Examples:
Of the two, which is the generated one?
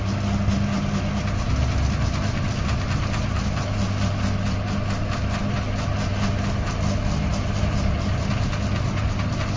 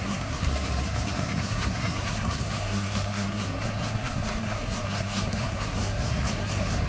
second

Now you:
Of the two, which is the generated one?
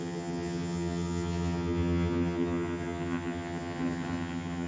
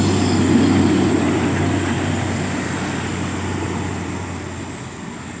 first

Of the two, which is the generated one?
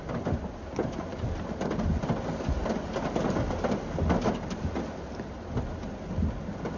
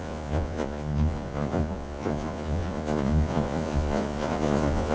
second